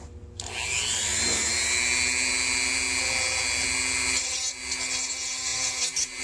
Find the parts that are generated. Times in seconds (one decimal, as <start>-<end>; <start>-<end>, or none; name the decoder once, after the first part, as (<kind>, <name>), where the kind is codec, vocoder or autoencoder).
none